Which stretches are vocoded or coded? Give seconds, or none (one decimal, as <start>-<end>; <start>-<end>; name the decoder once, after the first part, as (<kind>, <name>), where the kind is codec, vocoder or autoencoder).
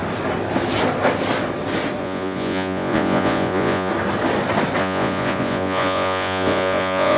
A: 2.0-3.9 (vocoder, Vocos); 4.8-7.2